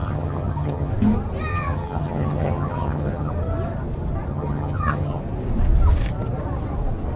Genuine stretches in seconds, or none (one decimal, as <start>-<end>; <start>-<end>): 0.9-1.5; 3.3-4.3; 5.2-7.2